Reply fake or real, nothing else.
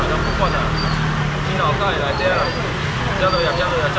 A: real